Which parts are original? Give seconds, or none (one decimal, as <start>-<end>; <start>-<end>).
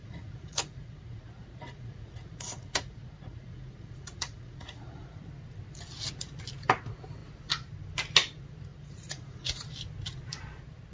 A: 5.2-8.7; 9.6-10.9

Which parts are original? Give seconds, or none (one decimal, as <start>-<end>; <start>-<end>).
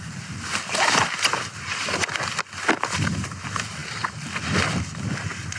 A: 0.0-5.6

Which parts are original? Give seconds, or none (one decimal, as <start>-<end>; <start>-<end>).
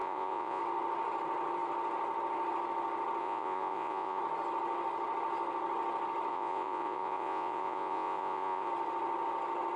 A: 0.6-3.2; 4.2-6.3; 8.7-9.8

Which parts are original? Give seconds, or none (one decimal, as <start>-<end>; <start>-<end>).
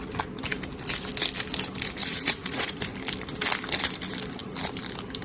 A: 0.0-2.0; 2.8-5.2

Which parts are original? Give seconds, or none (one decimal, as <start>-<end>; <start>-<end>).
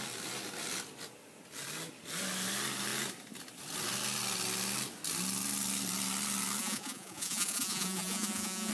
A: 0.0-6.6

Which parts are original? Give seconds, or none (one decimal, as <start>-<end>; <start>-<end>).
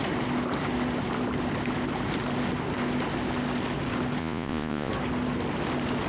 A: 0.0-4.2; 4.9-6.1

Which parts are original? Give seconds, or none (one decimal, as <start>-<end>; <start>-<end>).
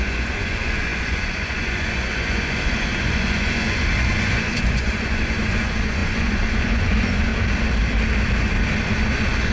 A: 7.3-8.9